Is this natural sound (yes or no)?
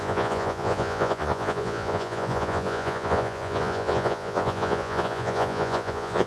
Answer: no